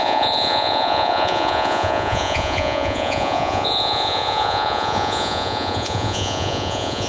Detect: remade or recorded remade